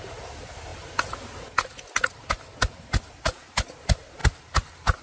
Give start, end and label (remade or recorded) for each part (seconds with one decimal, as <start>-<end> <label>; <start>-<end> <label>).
0.0-5.0 recorded